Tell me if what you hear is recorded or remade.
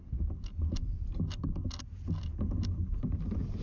recorded